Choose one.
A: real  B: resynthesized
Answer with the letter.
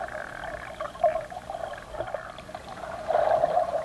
A